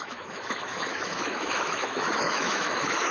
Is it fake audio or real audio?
fake